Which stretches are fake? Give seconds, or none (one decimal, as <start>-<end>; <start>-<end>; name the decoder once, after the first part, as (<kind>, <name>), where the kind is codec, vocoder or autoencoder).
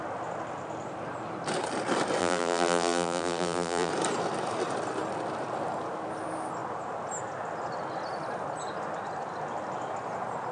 2.2-3.9 (vocoder, BigVGAN v2)